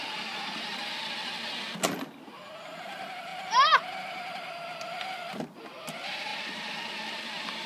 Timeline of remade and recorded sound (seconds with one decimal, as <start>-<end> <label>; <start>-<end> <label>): 0.0-7.7 recorded